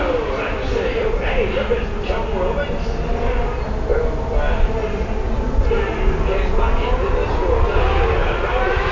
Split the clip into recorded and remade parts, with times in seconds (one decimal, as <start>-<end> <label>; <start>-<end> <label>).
0.0-8.9 recorded